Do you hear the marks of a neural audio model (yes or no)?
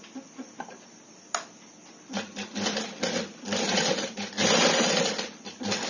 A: no